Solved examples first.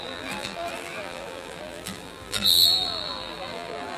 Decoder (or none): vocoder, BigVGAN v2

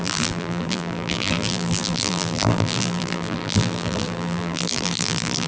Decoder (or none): vocoder, BigVGAN v2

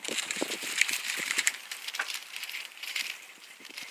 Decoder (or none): vocoder, BigVGAN v2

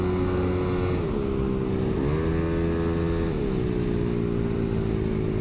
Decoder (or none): none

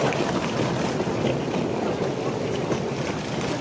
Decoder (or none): none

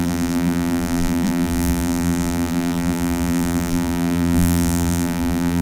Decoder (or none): vocoder, BigVGAN v2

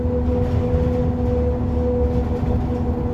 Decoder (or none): none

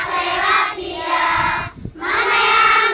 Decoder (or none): none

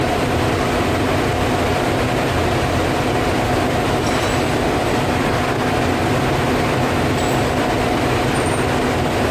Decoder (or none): none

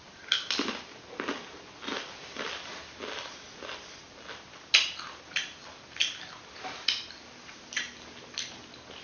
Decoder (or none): none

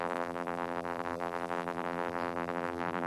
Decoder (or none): vocoder, BigVGAN v2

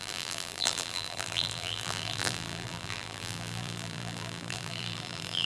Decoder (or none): vocoder, BigVGAN v2